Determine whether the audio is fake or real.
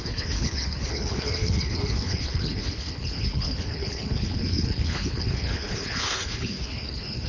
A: fake